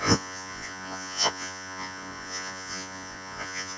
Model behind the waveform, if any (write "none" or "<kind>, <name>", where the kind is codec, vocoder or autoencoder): vocoder, Vocos